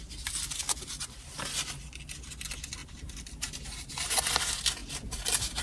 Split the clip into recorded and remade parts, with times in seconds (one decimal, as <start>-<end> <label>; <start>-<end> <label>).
0.0-2.8 recorded; 2.8-4.2 remade; 4.2-5.6 recorded